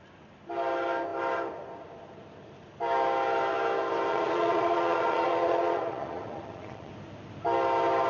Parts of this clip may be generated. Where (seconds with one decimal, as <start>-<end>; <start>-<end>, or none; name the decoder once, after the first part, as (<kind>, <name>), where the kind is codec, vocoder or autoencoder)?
4.1-6.9 (vocoder, Vocos)

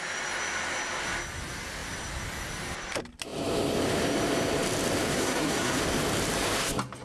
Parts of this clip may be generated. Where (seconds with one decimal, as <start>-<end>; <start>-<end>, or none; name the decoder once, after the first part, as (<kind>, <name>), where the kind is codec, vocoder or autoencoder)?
5.1-5.8 (codec, SNAC)

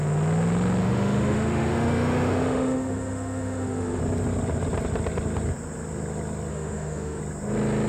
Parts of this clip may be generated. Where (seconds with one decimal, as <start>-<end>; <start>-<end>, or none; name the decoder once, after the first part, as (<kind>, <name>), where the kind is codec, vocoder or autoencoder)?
0.8-4.0 (autoencoder, DAC-VAE); 6.5-7.2

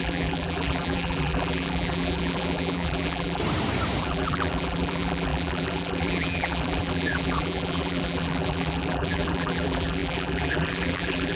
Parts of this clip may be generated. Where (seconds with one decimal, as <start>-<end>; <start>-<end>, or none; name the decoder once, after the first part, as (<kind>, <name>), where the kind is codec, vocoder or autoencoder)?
0.0-3.4 (vocoder, BigVGAN v2); 4.0-11.4

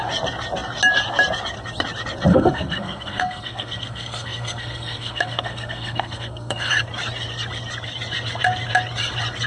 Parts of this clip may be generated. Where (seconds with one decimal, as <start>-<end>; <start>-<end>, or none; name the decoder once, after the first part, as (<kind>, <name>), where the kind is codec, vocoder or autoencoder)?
2.3-6.7 (codec, SNAC)